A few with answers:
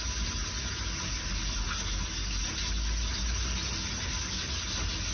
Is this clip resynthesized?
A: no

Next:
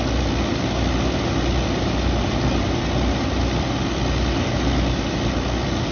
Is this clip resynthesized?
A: no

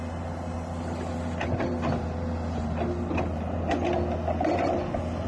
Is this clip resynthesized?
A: no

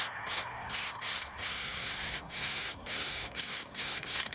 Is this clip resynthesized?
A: yes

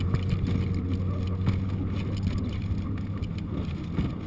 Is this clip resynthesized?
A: no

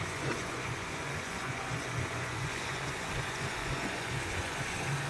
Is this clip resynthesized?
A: yes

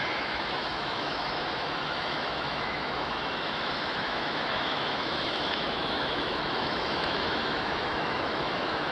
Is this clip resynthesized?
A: yes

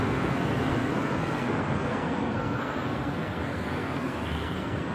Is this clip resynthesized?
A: yes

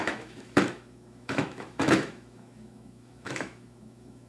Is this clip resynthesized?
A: yes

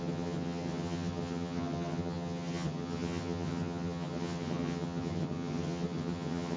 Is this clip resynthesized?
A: yes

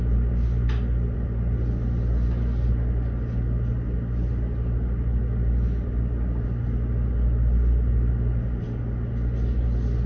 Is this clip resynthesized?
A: no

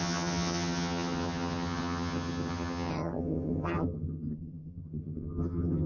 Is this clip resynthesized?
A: yes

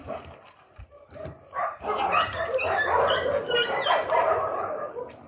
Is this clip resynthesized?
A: yes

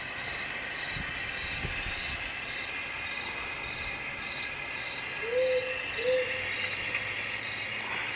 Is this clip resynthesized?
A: no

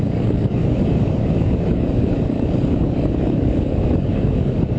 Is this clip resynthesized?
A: yes